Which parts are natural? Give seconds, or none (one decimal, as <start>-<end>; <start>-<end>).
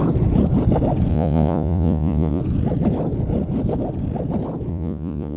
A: 0.0-1.1; 2.4-4.7